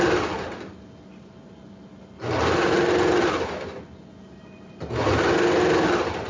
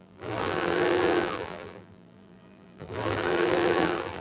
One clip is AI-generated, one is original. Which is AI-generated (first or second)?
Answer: second